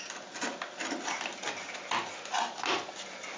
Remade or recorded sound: recorded